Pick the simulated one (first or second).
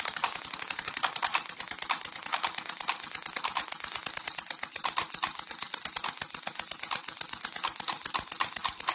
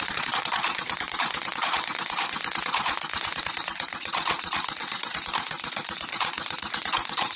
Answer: second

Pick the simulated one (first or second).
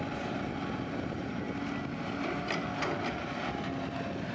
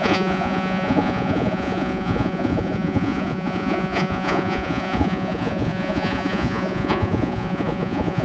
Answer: second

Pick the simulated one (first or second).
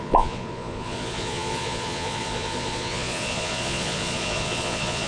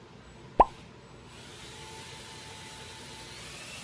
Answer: first